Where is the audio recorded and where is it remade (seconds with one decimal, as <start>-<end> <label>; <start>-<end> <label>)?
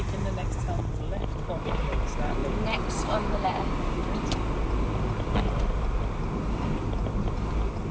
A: 0.0-7.9 recorded